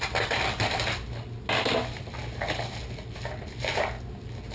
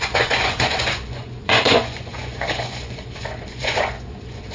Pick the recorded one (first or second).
first